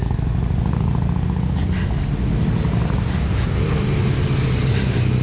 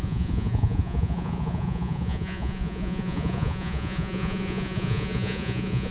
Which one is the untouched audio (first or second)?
first